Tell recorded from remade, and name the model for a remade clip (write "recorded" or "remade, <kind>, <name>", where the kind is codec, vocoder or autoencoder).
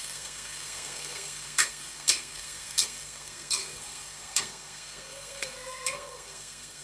remade, codec, SNAC